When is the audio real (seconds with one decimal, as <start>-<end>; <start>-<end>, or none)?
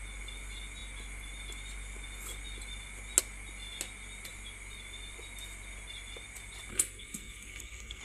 0.0-6.7